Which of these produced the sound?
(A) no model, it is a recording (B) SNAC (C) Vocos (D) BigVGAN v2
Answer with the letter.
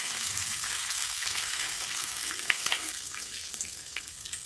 B